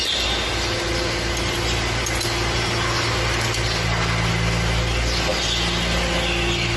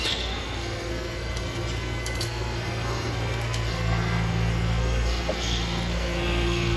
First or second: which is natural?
first